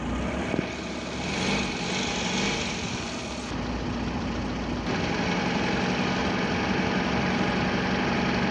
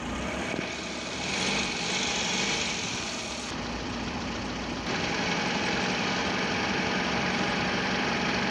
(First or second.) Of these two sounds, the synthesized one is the second